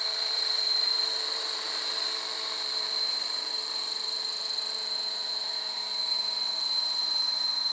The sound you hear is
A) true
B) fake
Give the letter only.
B